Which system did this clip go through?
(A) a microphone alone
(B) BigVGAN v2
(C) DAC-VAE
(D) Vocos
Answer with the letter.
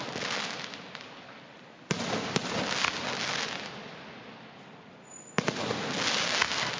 A